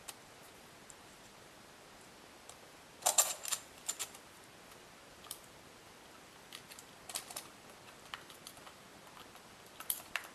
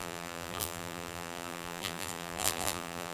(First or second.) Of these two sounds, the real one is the first